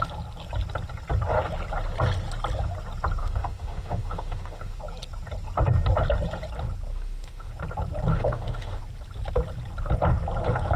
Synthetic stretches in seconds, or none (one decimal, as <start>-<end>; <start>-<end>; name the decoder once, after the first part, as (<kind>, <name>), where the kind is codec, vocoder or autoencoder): 3.2-4.8 (autoencoder, DAC-VAE); 6.9-7.5; 8.1-8.8